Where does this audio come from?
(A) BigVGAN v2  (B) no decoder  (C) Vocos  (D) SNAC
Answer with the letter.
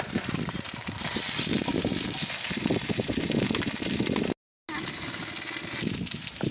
B